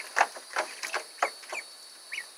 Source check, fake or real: real